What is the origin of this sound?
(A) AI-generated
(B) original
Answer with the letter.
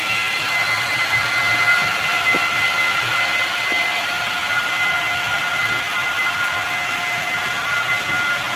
B